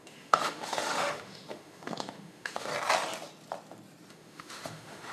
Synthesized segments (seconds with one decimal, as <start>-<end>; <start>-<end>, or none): 0.0-2.7; 4.1-5.1